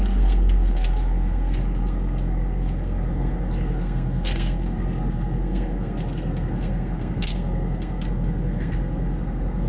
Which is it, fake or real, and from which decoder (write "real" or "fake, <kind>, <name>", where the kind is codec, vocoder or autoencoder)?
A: fake, codec, SNAC